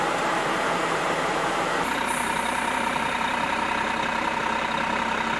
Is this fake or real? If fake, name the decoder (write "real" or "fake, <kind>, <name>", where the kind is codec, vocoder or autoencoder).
real